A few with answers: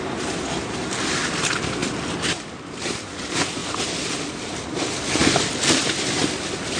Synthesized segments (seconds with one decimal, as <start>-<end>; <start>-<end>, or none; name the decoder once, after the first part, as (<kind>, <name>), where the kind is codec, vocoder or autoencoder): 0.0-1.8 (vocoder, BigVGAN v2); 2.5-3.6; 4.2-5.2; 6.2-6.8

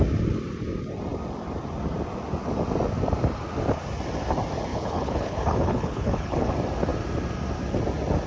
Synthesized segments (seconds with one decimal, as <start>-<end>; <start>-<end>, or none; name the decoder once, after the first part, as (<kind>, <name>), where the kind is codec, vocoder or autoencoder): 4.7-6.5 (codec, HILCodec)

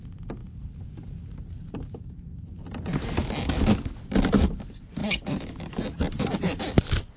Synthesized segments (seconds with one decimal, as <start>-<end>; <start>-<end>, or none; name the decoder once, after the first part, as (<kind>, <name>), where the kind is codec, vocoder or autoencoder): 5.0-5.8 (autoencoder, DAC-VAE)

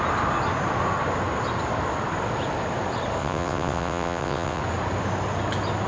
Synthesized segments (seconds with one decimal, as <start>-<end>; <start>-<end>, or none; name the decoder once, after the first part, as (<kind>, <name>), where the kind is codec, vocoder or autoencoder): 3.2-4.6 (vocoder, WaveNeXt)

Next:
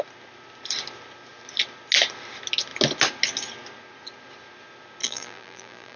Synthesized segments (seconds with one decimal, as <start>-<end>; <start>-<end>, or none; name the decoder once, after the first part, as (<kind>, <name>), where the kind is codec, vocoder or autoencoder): 5.0-6.0 (vocoder, BigVGAN v2)